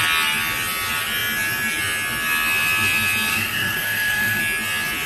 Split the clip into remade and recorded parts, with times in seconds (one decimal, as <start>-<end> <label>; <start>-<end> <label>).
0.0-3.3 recorded; 3.3-4.4 remade; 4.4-5.1 recorded